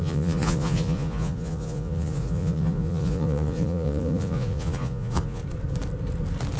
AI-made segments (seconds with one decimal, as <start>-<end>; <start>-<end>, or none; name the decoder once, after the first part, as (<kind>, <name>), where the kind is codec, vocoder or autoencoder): 0.0-5.4 (vocoder, Vocos)